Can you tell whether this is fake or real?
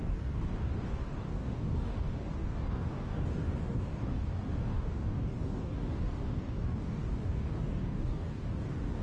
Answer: fake